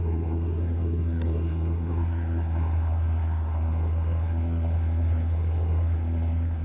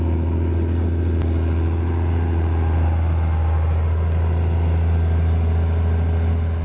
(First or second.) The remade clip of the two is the first